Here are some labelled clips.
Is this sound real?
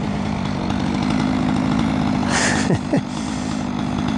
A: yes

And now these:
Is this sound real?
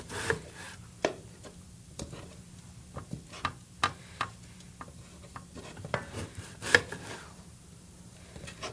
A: no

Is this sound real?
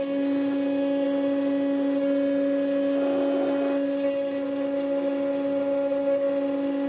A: yes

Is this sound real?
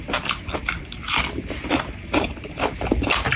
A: no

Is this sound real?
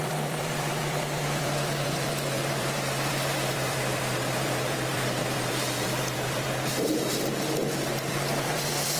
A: no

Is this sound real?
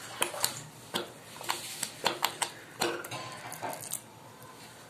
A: yes